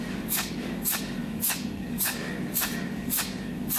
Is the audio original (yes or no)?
no